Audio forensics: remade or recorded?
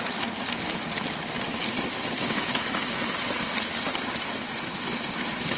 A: recorded